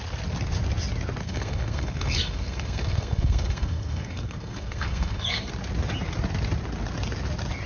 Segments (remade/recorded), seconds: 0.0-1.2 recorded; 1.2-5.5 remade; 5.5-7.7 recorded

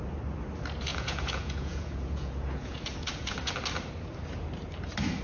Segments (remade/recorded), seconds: 0.0-0.9 recorded; 0.9-3.5 remade; 3.5-5.2 recorded

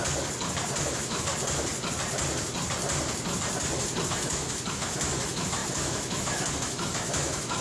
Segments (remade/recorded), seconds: 0.0-0.8 recorded; 0.8-1.3 remade; 1.3-4.1 recorded; 4.1-7.6 remade

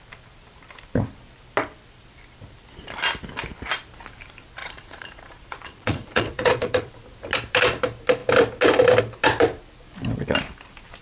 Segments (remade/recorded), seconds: 0.0-4.6 recorded; 4.6-6.9 remade; 6.9-11.0 recorded